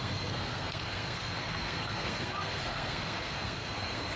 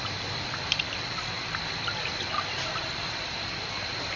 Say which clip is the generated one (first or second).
first